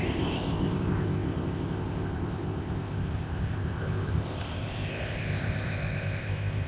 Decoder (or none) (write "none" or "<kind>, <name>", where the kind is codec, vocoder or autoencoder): codec, ZipCodec